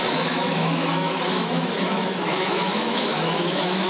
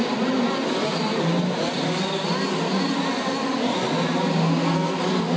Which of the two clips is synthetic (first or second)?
first